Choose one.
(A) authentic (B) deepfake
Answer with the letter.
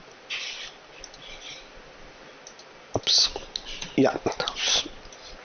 A